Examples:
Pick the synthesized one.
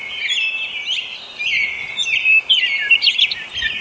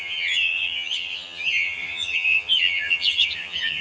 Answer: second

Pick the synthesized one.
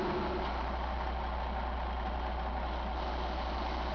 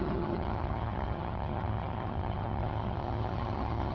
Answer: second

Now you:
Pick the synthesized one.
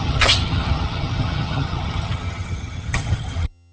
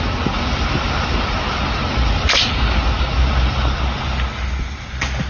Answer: first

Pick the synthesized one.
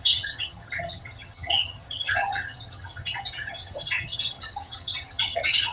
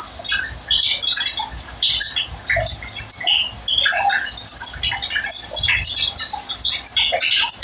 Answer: first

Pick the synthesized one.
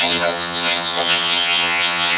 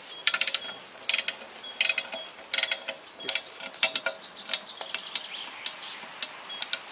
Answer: first